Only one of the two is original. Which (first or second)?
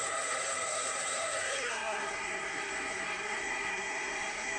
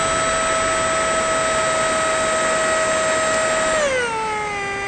second